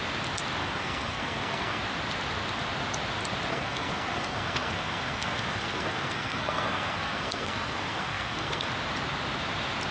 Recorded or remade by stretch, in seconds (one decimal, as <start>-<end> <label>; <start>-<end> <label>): 0.0-0.6 recorded; 0.6-1.8 remade; 1.8-3.5 recorded; 3.5-8.7 remade; 8.7-9.9 recorded